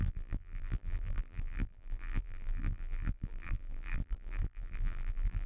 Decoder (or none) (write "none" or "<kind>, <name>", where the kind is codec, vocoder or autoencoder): vocoder, BigVGAN v2